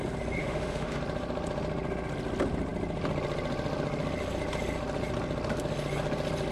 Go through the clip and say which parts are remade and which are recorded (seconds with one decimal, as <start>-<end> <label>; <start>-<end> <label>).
0.0-0.4 recorded; 0.4-1.0 remade; 1.0-6.5 recorded